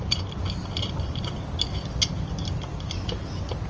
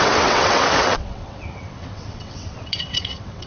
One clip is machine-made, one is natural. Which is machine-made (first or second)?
second